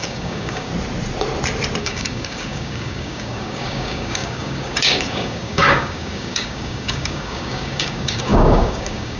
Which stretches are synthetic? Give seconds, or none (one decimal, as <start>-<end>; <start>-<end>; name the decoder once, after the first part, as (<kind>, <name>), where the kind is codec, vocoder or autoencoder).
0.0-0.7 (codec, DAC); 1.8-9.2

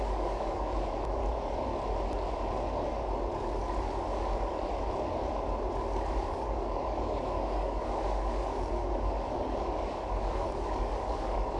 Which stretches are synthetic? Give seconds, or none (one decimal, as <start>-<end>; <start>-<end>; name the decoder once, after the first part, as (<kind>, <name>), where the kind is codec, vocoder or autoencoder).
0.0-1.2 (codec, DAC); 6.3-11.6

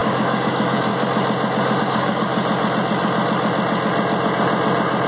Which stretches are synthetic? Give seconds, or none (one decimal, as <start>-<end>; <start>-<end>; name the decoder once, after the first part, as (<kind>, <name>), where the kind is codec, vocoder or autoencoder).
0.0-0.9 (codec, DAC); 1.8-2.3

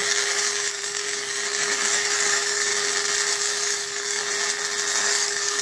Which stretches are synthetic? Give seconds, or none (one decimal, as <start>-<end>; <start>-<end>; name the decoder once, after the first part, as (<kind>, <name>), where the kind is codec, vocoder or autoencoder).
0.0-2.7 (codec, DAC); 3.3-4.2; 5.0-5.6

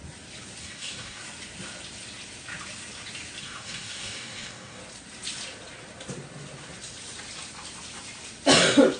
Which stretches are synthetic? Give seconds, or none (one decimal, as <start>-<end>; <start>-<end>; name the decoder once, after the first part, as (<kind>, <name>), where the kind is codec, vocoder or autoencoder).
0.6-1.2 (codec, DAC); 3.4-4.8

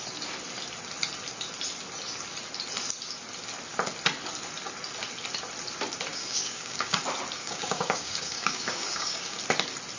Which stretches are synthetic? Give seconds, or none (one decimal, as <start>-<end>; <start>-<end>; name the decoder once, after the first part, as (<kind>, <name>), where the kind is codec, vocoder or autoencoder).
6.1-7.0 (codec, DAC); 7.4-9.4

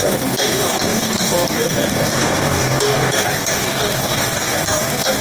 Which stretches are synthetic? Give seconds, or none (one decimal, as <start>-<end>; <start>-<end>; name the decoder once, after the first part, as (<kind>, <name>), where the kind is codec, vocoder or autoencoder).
0.0-5.2 (codec, DAC)